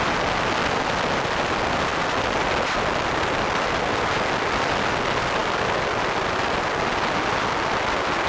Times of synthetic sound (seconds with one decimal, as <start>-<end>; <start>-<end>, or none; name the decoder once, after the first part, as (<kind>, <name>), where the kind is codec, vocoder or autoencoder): none